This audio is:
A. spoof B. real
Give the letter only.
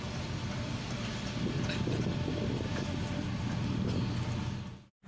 B